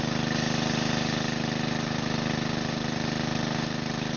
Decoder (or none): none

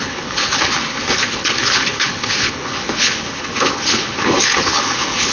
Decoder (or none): codec, HILCodec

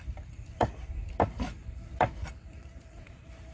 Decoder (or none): vocoder, BigVGAN v2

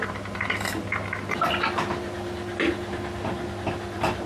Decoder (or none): none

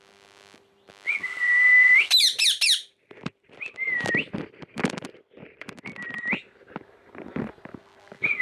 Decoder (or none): vocoder, BigVGAN v2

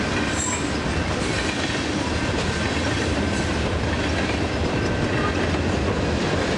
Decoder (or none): none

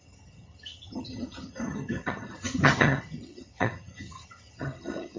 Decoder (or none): vocoder, HiFi-GAN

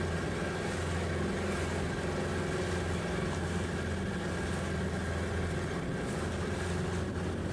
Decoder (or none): none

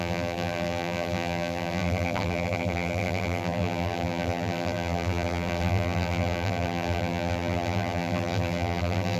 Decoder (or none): vocoder, BigVGAN v2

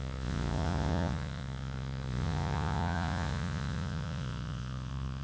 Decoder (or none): vocoder, Vocos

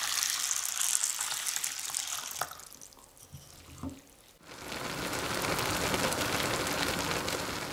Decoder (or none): none